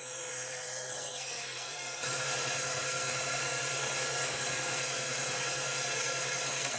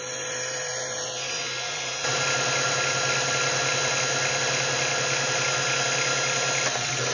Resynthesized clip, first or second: first